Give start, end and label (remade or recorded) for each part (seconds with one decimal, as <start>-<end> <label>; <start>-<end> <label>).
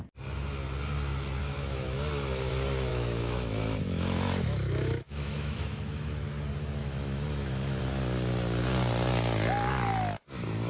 0.0-1.4 recorded; 1.4-2.5 remade; 2.5-2.9 recorded; 2.9-6.2 remade; 6.2-6.8 recorded; 6.8-7.8 remade; 7.8-10.7 recorded